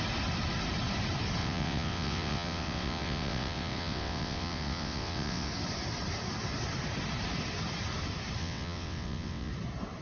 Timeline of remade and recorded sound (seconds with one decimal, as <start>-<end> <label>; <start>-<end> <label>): 0.0-1.4 recorded; 1.4-5.5 remade; 5.5-8.4 recorded; 8.4-9.5 remade; 9.5-10.0 recorded